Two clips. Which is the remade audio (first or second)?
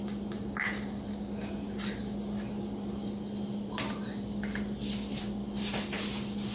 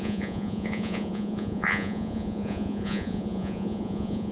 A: second